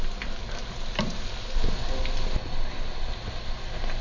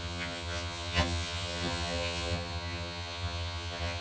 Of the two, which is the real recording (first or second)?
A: first